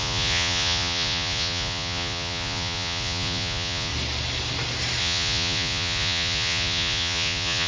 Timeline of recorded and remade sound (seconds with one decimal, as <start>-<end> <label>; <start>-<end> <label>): 0.0-3.9 remade; 3.9-5.0 recorded; 5.0-7.7 remade